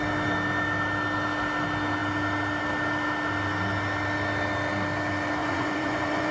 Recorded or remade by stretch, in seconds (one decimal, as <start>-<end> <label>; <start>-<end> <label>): 0.0-5.4 recorded; 5.4-6.3 remade